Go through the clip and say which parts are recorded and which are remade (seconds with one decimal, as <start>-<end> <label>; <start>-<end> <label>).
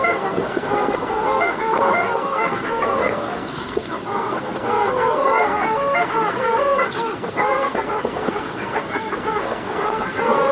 0.0-10.5 remade